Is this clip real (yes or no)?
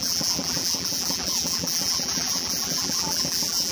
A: no